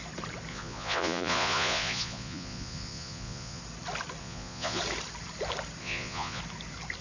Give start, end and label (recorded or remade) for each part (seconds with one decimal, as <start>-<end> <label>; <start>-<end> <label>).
0.0-0.5 recorded; 0.5-3.6 remade; 3.6-4.2 recorded; 4.2-4.8 remade; 4.8-5.8 recorded; 5.8-6.4 remade; 6.4-7.0 recorded